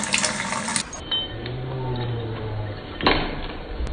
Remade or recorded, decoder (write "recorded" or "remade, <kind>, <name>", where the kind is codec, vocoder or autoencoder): recorded